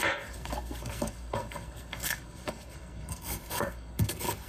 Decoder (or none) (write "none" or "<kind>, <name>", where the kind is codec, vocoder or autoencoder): codec, SNAC